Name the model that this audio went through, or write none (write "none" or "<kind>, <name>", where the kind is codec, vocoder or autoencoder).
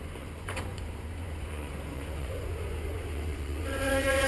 vocoder, Vocos